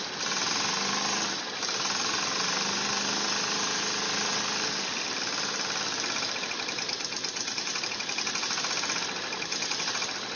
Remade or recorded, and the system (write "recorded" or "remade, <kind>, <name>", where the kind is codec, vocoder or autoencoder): recorded